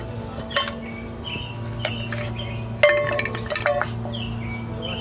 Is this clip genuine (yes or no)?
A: yes